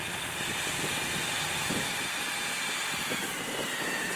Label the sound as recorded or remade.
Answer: recorded